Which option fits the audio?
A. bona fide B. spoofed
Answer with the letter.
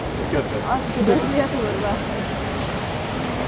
A